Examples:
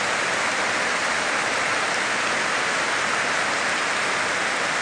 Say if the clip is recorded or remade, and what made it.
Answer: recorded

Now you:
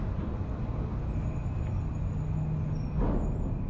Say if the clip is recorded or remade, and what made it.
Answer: recorded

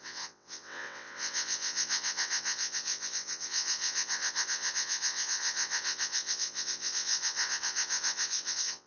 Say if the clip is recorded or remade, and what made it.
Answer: remade, vocoder, WaveNeXt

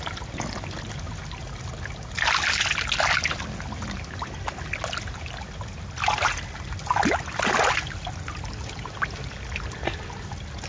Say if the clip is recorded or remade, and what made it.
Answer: recorded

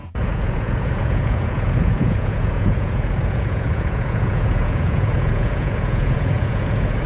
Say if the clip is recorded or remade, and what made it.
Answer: remade, vocoder, Vocos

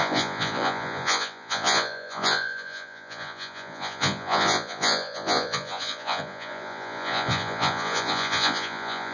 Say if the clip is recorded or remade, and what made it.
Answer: remade, vocoder, Vocos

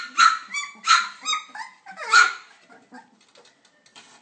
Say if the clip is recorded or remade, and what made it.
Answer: recorded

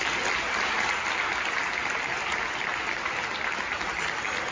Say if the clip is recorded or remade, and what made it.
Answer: recorded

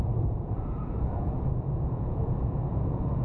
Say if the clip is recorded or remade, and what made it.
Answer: remade, vocoder, Vocos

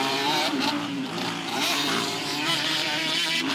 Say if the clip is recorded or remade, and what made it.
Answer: remade, vocoder, BigVGAN v2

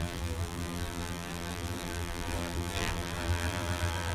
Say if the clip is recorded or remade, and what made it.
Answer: remade, vocoder, BigVGAN v2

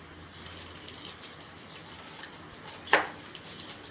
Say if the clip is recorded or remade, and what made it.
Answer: recorded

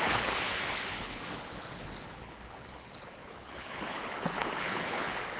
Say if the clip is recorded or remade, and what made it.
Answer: remade, codec, HILCodec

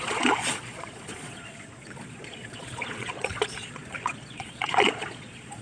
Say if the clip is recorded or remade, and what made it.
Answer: remade, vocoder, Vocos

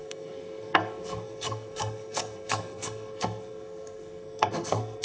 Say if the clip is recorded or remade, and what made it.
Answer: remade, codec, SNAC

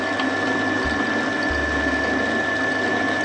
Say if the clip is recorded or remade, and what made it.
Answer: recorded